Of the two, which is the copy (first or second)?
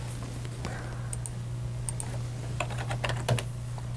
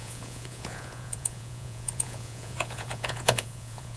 second